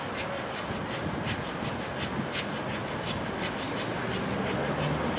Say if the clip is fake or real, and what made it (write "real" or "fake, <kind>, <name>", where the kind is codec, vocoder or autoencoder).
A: real